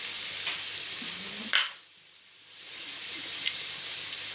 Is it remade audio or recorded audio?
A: remade